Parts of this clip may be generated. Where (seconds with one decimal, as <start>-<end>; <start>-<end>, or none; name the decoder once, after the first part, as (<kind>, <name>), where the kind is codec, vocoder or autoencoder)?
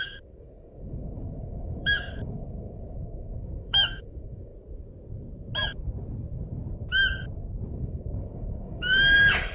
0.0-4.5 (codec, DAC); 7.7-9.5